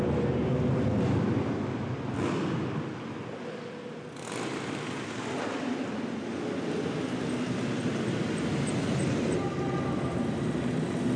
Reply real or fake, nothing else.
real